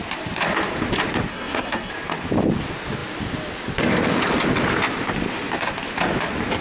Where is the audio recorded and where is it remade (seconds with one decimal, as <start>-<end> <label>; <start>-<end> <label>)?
0.0-1.3 recorded; 1.3-1.9 remade; 1.9-6.6 recorded